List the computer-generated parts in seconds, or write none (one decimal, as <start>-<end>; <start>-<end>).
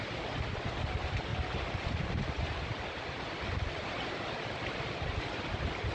none